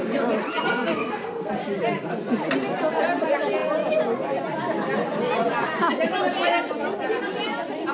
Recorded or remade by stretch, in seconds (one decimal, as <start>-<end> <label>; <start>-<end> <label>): 0.0-0.7 recorded; 0.7-1.5 remade; 1.5-7.9 recorded

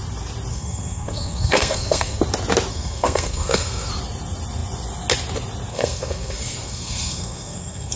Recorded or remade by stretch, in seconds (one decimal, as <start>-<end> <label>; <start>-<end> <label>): 0.0-0.5 recorded; 0.5-2.2 remade; 2.2-2.7 recorded; 2.7-3.9 remade; 3.9-5.7 recorded; 5.7-8.0 remade

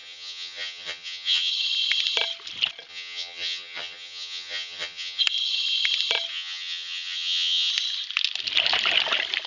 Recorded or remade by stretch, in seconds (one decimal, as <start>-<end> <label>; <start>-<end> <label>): 0.0-1.5 remade; 1.5-2.9 recorded; 2.9-5.2 remade; 5.2-6.3 recorded; 6.3-7.7 remade; 7.7-9.5 recorded

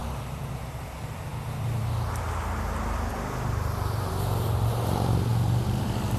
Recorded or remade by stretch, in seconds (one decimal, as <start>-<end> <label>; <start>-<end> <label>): 0.0-6.2 remade

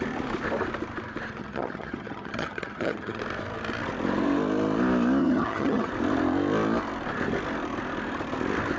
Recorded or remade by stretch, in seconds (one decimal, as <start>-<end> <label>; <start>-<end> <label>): 0.0-1.4 recorded; 1.4-3.2 remade; 3.2-5.2 recorded; 5.2-5.9 remade; 5.9-8.8 recorded

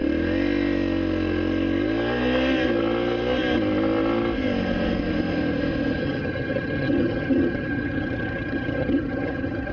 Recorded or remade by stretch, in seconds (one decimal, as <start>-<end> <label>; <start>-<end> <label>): 0.0-6.0 recorded; 6.0-9.7 remade

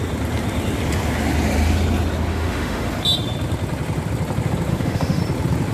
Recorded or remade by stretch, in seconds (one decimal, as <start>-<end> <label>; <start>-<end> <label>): 0.0-2.3 recorded; 2.3-2.9 remade; 2.9-4.7 recorded; 4.7-5.2 remade; 5.2-5.7 recorded